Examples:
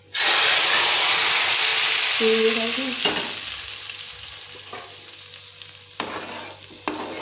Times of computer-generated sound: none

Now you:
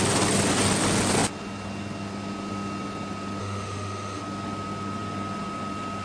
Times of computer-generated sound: 3.4-4.2 (autoencoder, DAC-VAE)

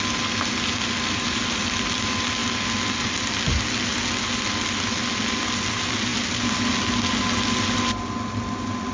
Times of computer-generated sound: none

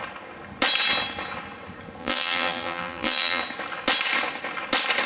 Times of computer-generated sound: 2.0-3.4 (vocoder, BigVGAN v2)

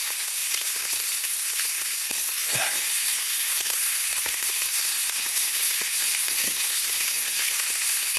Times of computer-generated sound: 0.0-8.2 (codec, SNAC)

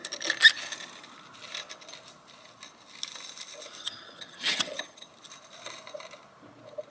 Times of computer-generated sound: 3.8-5.1 (vocoder, HiFi-GAN)

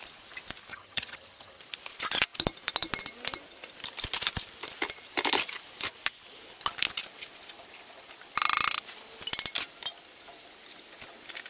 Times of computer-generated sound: 0.7-1.6 (vocoder, HiFi-GAN)